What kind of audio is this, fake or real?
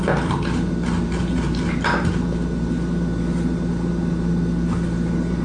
real